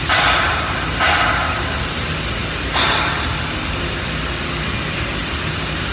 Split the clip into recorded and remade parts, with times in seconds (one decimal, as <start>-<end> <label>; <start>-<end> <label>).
0.0-5.2 recorded; 5.2-5.9 remade